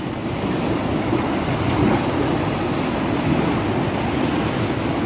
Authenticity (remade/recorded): recorded